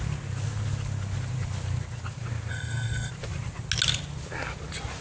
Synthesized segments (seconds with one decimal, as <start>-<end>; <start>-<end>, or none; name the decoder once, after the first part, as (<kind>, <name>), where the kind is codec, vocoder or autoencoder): 2.5-3.1 (codec, SNAC)